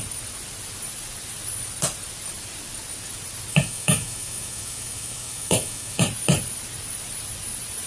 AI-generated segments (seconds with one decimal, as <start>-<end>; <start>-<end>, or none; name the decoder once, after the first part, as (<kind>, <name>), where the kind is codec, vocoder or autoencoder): 3.5-6.0 (autoencoder, DAC-VAE)